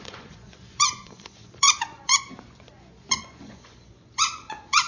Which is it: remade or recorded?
remade